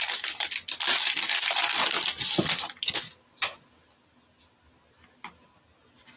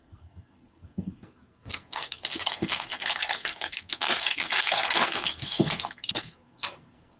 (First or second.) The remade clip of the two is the second